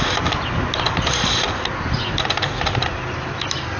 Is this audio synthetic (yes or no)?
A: no